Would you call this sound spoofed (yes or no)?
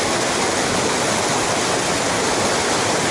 no